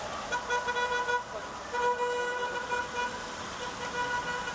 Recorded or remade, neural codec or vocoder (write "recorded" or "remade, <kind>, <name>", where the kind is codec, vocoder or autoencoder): recorded